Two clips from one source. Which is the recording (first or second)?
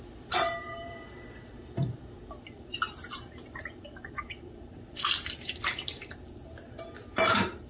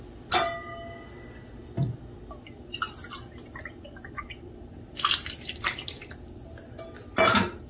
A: second